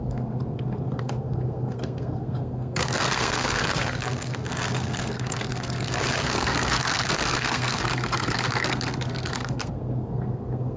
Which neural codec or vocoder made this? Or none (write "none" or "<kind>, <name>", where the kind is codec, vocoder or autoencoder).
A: codec, SNAC